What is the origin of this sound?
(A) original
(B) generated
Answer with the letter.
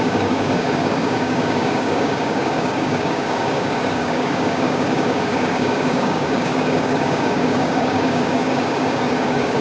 B